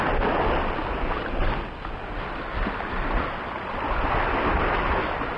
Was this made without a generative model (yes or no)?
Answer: yes